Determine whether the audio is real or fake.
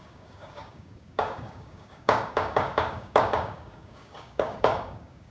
fake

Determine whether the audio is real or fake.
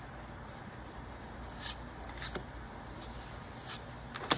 real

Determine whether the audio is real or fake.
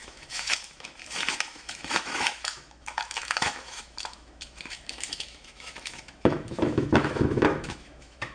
fake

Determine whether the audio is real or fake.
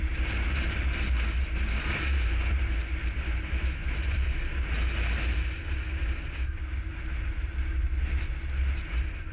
real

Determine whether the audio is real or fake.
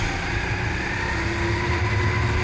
real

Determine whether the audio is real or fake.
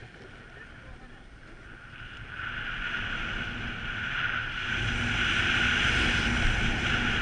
real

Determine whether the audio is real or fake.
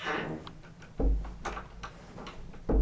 real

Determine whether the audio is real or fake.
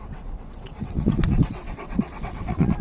fake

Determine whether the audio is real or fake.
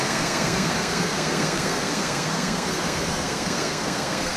fake